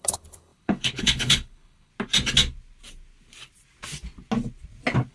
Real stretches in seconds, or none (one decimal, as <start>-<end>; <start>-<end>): 1.9-5.1